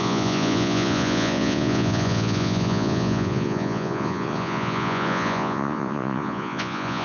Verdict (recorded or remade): remade